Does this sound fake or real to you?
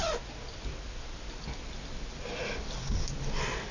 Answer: real